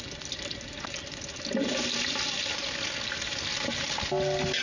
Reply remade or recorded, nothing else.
recorded